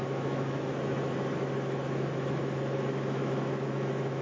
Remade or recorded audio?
remade